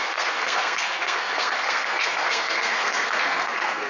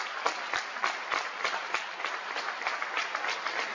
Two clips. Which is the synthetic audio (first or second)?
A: first